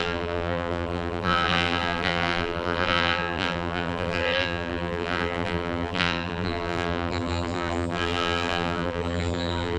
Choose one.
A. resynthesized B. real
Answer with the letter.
A